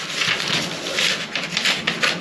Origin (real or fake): real